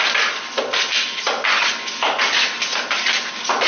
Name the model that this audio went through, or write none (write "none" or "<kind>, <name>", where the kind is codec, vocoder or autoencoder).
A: none